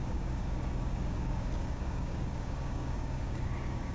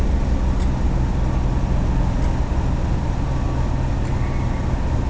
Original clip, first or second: second